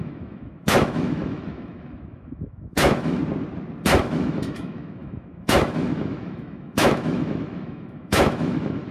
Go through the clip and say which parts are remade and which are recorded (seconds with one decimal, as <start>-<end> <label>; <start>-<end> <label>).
0.0-3.2 remade; 3.2-4.0 recorded; 4.0-8.9 remade